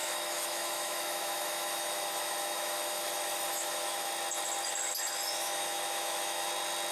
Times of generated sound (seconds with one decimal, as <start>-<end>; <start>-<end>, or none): 0.0-4.1; 5.4-6.5